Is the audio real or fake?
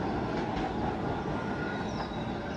real